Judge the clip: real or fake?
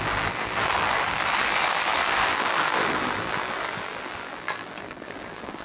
fake